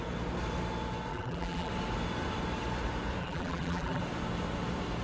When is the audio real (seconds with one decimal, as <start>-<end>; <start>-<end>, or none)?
0.0-1.1; 1.7-3.2; 4.0-5.0